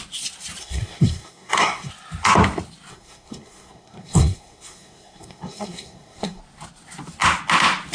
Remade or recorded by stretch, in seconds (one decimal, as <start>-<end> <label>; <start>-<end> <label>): 0.0-0.6 recorded; 0.6-1.9 remade; 1.9-2.9 recorded; 2.9-6.4 remade; 6.4-7.9 recorded